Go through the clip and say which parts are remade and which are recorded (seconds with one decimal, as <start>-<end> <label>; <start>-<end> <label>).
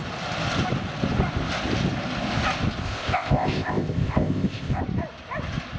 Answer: 0.0-2.8 recorded; 2.8-4.8 remade; 4.8-5.8 recorded